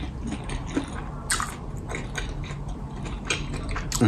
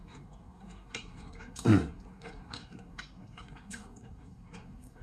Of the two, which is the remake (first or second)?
second